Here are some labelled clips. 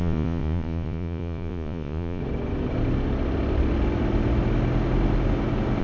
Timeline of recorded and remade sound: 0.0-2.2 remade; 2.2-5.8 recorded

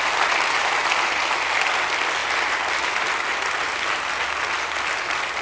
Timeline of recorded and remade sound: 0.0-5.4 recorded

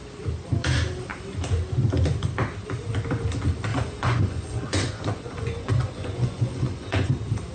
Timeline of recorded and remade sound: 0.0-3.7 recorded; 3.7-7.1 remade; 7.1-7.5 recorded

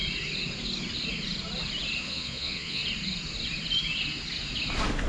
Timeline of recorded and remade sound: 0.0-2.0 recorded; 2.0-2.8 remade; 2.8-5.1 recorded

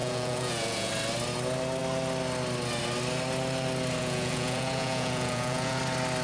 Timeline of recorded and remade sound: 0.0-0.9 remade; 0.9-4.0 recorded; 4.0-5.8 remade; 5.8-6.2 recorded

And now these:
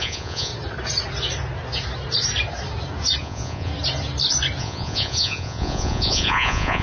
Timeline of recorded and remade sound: 0.0-0.5 remade; 0.5-3.2 recorded; 3.2-3.7 remade; 3.7-4.6 recorded; 4.6-6.8 remade

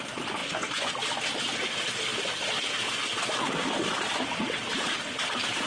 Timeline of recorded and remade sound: 0.0-0.4 recorded; 0.4-0.9 remade; 0.9-5.7 recorded

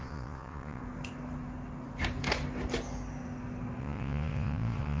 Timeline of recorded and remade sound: 0.0-0.8 remade; 0.8-3.8 recorded; 3.8-5.0 remade